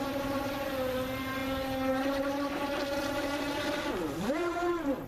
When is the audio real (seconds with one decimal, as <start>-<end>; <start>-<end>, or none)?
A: 0.0-5.1